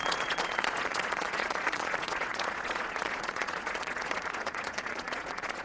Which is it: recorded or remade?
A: remade